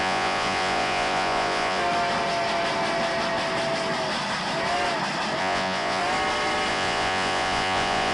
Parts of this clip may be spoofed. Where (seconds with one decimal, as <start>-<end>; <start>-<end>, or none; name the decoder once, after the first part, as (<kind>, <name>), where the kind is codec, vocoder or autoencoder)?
0.0-1.8 (vocoder, Vocos); 5.4-6.0; 6.7-8.1